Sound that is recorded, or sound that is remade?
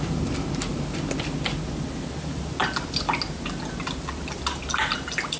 recorded